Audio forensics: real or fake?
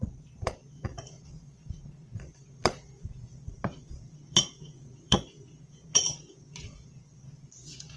fake